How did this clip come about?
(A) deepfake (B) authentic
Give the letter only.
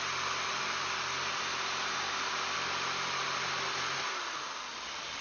B